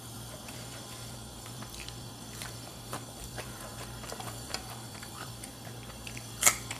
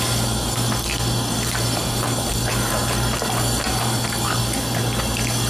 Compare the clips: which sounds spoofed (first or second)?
first